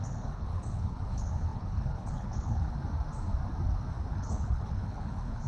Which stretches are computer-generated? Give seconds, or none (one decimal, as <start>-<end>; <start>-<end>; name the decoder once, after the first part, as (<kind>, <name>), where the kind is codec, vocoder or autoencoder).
0.0-2.8 (codec, HILCodec); 4.1-5.5